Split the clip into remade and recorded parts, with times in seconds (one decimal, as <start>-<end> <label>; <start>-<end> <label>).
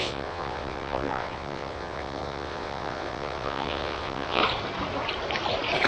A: 0.0-4.4 remade; 4.4-5.9 recorded